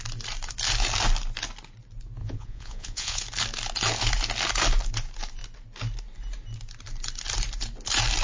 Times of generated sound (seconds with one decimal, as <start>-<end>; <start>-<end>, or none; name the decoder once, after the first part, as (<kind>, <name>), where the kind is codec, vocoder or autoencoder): 2.2-3.2 (vocoder, Vocos)